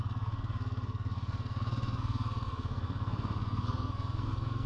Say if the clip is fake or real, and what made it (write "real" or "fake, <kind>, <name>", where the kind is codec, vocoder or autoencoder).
fake, codec, SNAC